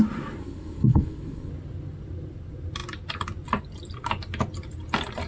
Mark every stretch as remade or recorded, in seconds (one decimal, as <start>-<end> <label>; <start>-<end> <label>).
0.0-0.4 recorded; 0.4-1.5 remade; 1.5-5.3 recorded